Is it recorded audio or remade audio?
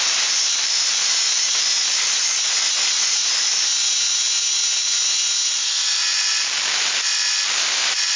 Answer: recorded